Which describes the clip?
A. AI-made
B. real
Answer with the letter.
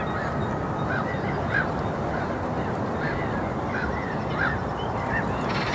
B